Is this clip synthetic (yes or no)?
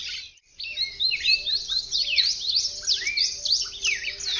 no